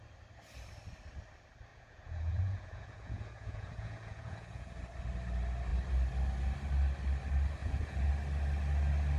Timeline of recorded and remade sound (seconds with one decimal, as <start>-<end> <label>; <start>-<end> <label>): 0.0-1.7 recorded; 1.7-4.7 remade; 4.7-7.6 recorded; 7.6-8.1 remade; 8.1-9.2 recorded